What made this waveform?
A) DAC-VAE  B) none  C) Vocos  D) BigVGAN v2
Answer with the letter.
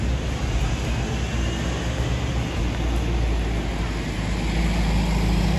B